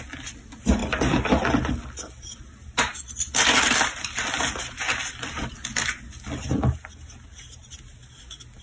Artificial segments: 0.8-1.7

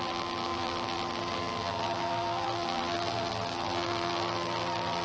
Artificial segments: 0.0-5.0

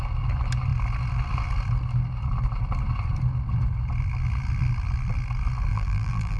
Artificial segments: 5.7-6.4